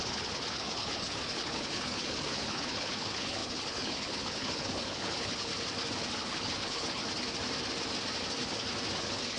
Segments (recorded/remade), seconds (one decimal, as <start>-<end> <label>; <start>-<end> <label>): 0.0-5.5 remade; 5.5-6.2 recorded; 6.2-7.0 remade; 7.0-9.0 recorded; 9.0-9.4 remade